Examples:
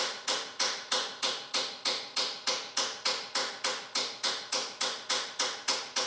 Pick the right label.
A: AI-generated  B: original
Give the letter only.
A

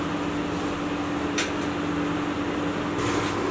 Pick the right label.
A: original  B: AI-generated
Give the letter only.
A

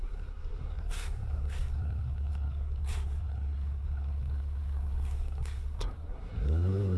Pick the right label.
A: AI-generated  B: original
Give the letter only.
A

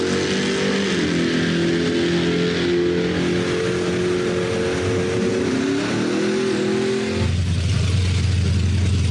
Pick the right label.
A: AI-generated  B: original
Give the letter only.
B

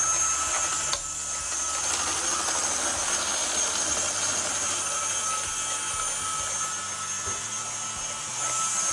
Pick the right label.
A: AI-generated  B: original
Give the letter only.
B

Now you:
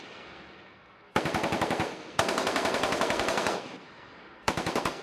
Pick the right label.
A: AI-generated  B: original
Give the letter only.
A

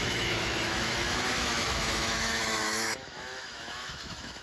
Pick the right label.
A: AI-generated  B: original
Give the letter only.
A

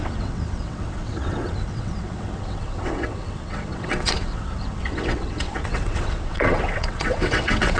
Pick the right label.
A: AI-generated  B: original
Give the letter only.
A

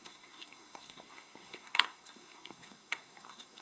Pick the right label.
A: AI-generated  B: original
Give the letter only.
A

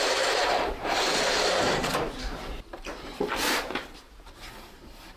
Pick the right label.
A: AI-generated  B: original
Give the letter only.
A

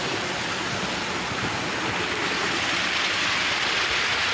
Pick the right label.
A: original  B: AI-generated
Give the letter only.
A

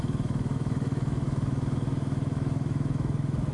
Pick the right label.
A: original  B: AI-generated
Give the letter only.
B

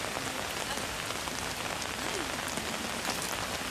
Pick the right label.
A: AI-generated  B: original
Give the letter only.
B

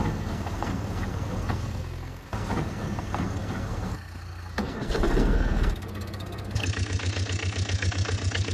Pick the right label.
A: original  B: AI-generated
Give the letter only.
B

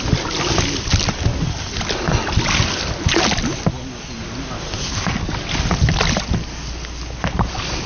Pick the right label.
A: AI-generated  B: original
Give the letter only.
B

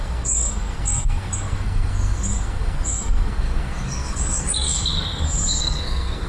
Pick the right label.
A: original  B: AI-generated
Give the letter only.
B